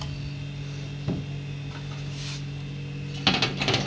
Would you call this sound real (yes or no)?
yes